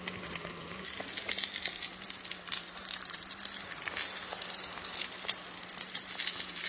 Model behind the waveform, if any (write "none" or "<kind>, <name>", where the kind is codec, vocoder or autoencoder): none